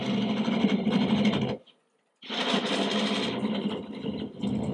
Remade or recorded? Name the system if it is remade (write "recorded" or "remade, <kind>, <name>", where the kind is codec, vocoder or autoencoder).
recorded